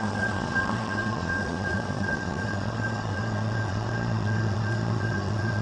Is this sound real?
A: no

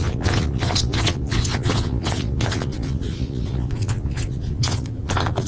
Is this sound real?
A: no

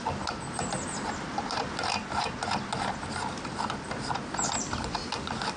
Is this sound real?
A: yes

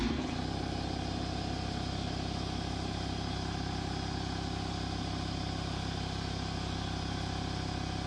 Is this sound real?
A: yes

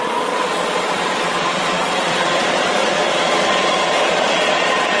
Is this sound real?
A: no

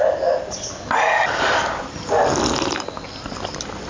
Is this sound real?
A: yes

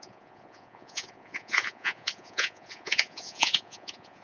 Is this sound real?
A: no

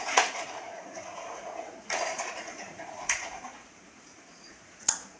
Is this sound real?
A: no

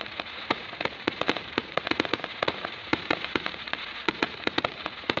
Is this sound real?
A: no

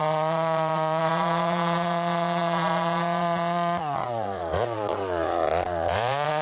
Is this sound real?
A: no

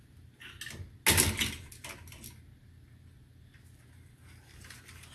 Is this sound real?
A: yes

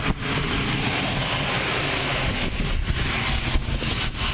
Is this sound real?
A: yes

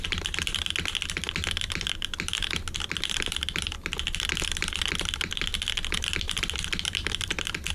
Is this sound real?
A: yes